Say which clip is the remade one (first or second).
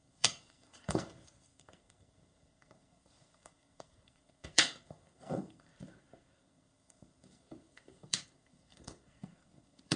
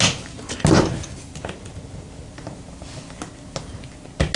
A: first